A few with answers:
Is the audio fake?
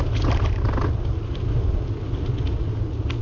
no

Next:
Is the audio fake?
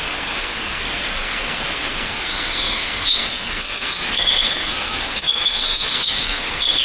yes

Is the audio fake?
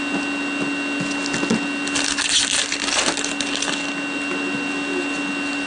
no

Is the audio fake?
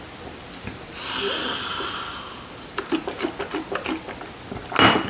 no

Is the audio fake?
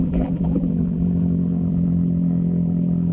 yes